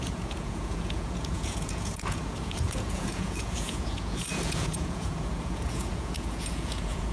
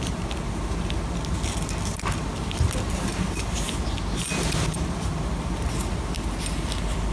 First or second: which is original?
second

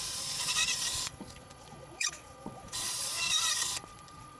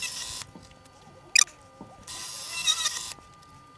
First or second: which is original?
second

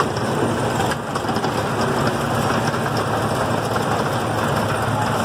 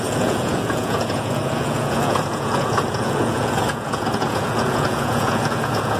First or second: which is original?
first